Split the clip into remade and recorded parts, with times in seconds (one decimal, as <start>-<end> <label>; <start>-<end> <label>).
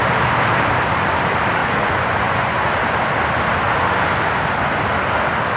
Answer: 0.0-1.6 recorded; 1.6-2.7 remade; 2.7-5.6 recorded